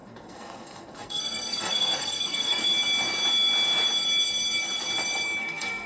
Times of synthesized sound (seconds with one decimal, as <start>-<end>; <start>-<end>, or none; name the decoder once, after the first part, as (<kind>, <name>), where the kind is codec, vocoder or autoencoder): 0.0-2.6 (codec, SNAC); 5.4-5.9